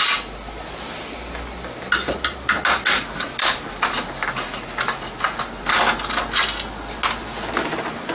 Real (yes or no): yes